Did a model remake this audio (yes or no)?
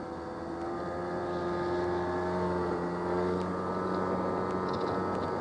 no